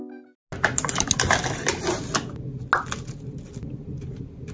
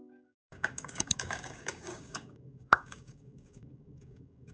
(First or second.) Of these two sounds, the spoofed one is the second